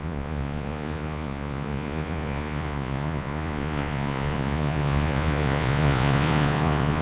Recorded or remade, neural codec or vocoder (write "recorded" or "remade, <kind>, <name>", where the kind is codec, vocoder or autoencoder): remade, vocoder, Vocos